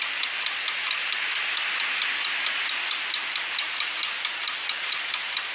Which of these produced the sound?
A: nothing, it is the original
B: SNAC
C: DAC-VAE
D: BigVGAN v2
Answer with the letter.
A